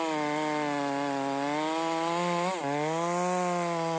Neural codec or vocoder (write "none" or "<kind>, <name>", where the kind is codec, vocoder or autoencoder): none